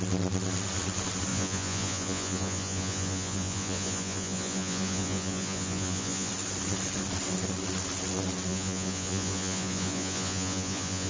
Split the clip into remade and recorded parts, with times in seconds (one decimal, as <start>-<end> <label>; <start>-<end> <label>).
0.0-1.3 recorded; 1.3-6.3 remade; 6.3-8.5 recorded; 8.5-11.1 remade